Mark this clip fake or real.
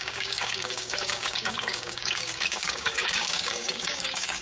fake